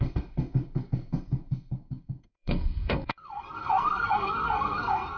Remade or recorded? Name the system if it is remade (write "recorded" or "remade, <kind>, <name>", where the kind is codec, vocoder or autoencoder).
remade, codec, SNAC